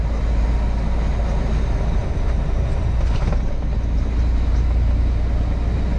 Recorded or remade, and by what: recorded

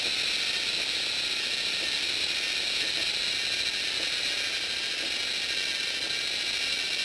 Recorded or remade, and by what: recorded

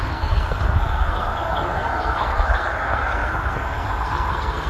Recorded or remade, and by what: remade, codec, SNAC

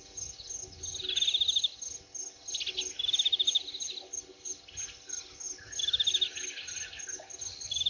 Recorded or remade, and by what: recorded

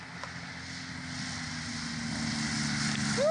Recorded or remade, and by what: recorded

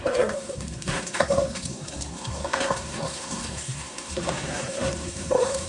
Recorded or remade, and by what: remade, codec, SNAC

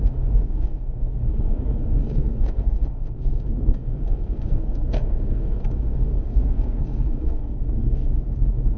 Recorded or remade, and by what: remade, codec, SNAC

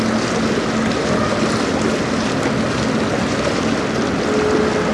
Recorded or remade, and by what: recorded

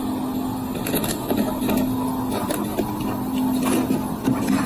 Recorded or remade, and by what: recorded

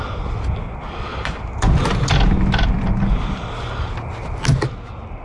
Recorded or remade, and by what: recorded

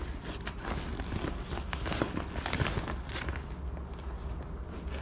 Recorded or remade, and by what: recorded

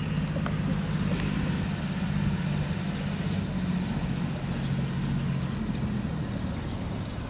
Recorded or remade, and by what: recorded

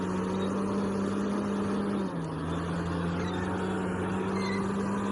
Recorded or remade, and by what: recorded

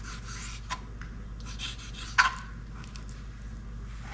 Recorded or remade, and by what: recorded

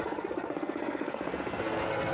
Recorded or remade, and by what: remade, codec, SNAC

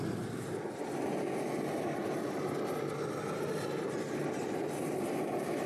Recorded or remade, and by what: recorded